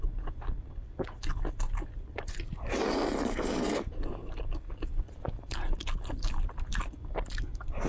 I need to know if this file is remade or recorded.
recorded